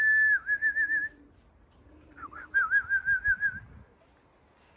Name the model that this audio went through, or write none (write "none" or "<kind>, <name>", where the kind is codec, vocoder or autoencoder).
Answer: none